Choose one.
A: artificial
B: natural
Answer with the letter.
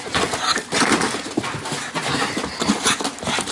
B